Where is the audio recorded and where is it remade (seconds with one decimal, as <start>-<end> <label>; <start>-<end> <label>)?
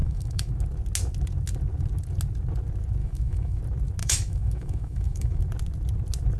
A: 0.0-0.5 remade; 0.5-3.0 recorded; 3.0-3.6 remade; 3.6-4.0 recorded; 4.0-5.4 remade; 5.4-6.4 recorded